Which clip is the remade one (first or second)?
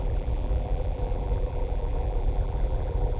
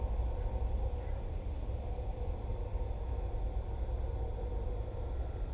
first